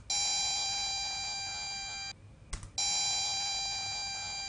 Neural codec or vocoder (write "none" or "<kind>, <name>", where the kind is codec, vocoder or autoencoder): none